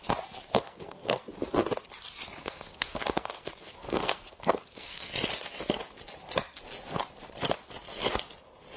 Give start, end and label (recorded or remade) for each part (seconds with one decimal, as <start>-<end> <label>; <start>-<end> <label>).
0.0-0.5 recorded; 0.5-1.2 remade; 1.2-2.4 recorded; 2.4-5.1 remade; 5.1-8.8 recorded